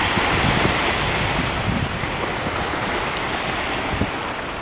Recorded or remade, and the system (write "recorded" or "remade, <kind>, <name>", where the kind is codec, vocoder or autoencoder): recorded